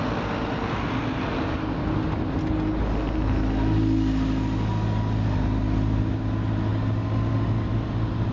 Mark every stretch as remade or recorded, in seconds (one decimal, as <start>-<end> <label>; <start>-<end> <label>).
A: 0.0-8.3 recorded